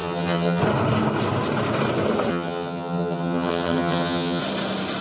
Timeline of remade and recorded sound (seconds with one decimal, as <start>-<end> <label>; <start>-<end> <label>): 0.0-0.6 remade; 0.6-2.3 recorded; 2.3-4.4 remade; 4.4-5.0 recorded